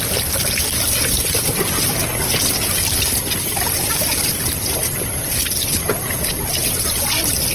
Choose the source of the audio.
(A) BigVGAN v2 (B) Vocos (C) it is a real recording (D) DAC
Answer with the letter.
C